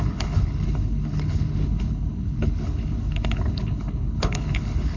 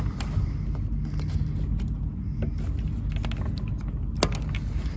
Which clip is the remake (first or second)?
first